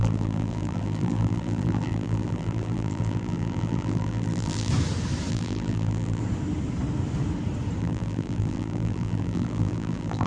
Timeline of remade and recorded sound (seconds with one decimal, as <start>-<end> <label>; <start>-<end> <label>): 0.0-4.7 remade; 4.7-5.3 recorded; 5.3-6.2 remade; 6.2-7.8 recorded; 7.8-10.3 remade